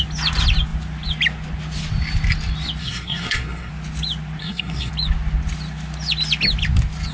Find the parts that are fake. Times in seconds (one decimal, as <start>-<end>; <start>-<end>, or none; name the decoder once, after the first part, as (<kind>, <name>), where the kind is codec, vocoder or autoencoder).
2.8-3.7 (codec, SNAC); 4.4-4.9